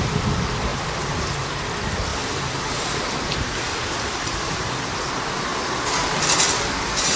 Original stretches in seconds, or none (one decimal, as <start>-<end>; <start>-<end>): 0.0-0.7; 1.6-2.1; 5.1-7.2